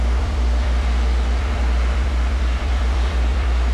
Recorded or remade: remade